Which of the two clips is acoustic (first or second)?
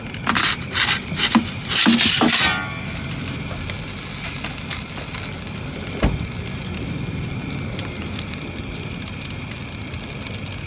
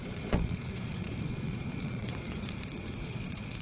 first